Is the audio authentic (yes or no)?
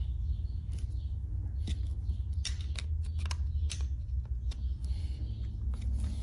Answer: yes